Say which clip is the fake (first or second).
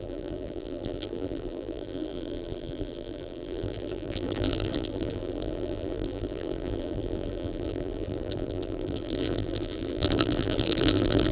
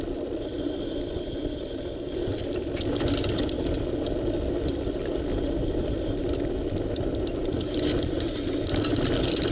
first